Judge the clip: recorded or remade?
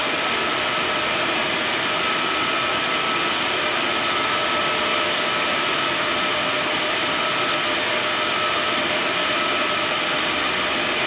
recorded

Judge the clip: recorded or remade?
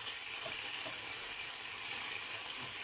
recorded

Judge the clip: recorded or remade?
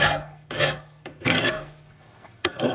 remade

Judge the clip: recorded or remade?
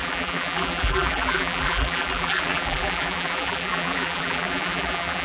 remade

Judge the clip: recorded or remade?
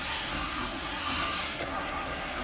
remade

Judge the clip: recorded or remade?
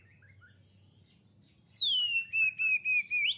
recorded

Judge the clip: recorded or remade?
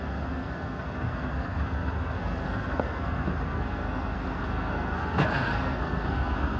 remade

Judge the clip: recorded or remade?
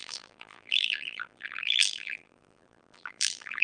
remade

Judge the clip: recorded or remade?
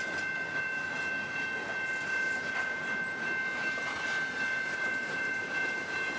recorded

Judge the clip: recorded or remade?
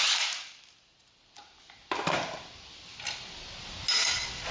recorded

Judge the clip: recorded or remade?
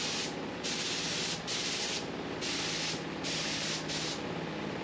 recorded